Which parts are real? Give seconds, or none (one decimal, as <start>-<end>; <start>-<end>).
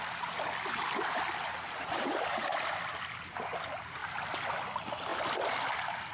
0.0-2.5; 3.2-5.1